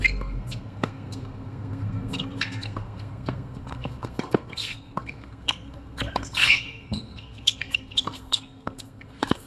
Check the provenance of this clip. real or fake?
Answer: fake